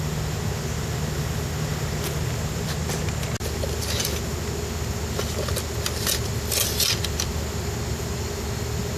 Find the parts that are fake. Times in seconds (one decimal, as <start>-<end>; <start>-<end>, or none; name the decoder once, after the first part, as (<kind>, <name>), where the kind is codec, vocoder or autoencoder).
none